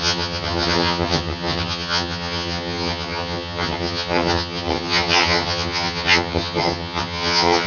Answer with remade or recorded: remade